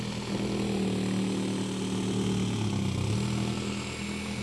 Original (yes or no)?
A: yes